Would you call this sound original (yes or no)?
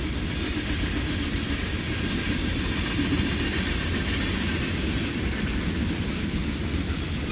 yes